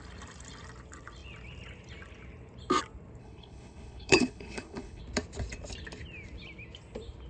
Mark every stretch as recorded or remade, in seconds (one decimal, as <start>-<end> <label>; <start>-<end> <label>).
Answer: 0.0-3.2 recorded; 3.2-5.0 remade; 5.0-7.3 recorded